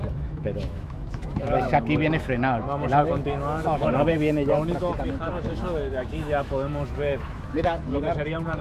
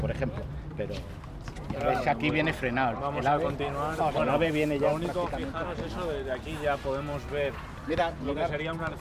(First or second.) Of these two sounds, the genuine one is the second